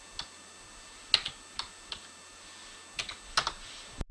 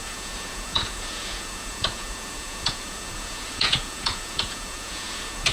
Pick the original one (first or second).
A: first